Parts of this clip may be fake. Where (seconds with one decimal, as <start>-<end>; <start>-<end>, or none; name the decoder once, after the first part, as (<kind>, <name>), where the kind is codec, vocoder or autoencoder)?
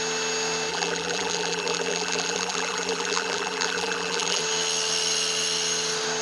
0.7-4.4 (vocoder, BigVGAN v2)